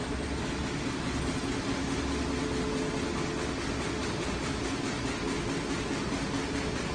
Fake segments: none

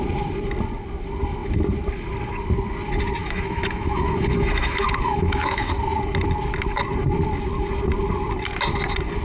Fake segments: 3.2-5.7

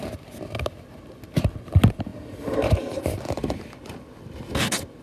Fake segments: 2.1-4.5

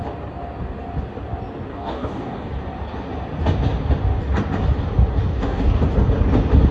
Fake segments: 1.7-2.5; 5.3-5.8